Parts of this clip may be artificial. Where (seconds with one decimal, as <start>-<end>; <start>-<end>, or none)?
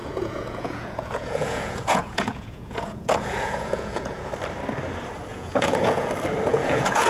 0.0-4.3; 5.3-6.1; 6.5-7.1